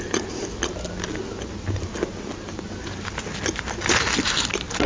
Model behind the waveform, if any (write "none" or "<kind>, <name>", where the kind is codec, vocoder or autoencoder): none